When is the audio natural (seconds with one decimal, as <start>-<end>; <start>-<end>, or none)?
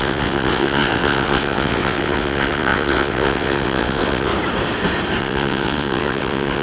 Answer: 4.3-5.2